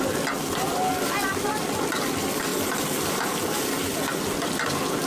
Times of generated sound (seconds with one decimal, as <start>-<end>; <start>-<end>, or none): none